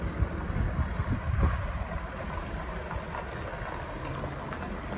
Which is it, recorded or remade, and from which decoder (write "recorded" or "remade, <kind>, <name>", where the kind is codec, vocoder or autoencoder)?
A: recorded